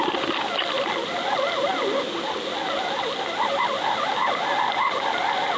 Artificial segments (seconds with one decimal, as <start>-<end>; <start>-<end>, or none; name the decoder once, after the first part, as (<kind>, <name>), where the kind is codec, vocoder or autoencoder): none